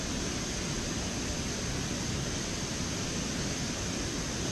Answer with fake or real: real